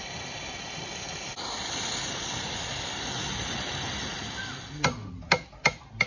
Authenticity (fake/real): real